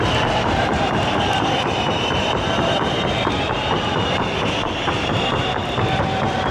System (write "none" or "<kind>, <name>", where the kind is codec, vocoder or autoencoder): vocoder, BigVGAN v2